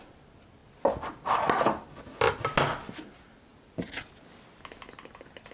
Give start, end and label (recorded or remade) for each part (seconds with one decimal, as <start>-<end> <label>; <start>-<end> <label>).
0.0-5.5 recorded